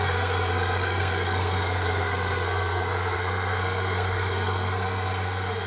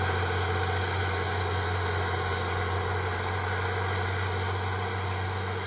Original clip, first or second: second